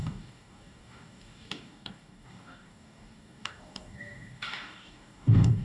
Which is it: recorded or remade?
remade